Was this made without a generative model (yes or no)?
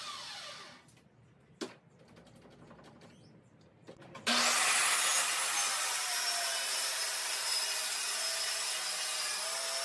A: yes